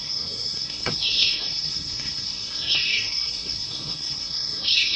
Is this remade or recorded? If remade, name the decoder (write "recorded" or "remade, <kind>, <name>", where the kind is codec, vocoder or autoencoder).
remade, codec, SNAC